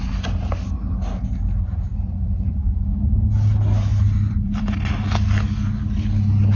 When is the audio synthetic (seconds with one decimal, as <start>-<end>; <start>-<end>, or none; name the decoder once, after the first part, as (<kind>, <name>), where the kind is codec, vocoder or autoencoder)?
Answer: 3.9-4.6 (vocoder, BigVGAN v2)

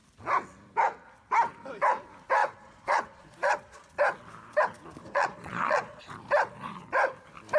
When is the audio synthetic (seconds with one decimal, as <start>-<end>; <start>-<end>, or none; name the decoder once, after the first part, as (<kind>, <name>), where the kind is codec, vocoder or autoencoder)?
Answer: 2.4-3.9 (vocoder, Vocos); 5.0-6.0

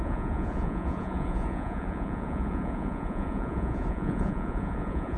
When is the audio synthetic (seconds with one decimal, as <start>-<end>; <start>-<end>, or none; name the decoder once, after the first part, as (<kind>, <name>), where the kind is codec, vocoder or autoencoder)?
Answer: 0.0-5.2 (vocoder, Vocos)

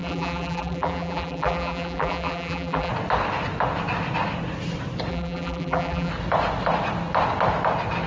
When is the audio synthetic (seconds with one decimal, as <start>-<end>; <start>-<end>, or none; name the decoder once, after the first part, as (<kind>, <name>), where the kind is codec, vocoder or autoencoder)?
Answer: 0.0-2.9 (vocoder, BigVGAN v2); 5.1-6.1

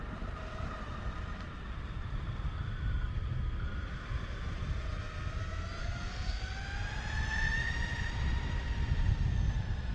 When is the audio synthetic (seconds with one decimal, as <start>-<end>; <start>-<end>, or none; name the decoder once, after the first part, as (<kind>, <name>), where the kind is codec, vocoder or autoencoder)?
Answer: 5.8-6.4 (codec, SNAC)

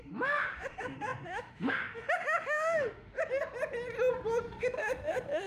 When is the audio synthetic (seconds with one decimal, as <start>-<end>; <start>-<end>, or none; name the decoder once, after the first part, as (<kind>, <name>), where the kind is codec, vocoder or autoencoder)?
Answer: 0.0-3.2 (autoencoder, DAC-VAE); 4.4-5.5